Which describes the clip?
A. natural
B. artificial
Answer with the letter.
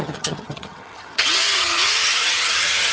B